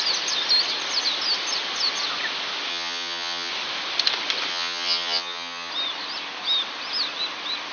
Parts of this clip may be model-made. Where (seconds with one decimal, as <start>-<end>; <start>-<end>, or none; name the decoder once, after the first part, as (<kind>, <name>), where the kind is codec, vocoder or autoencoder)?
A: 2.7-3.5 (vocoder, HiFi-GAN); 4.5-5.7